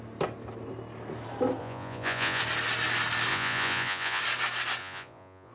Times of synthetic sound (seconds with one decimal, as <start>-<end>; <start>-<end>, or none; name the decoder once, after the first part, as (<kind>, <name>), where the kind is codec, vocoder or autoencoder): 1.6-2.4 (vocoder, Vocos); 3.3-4.2; 4.8-5.5